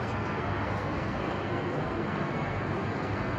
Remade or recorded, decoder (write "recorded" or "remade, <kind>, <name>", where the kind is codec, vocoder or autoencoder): remade, codec, SNAC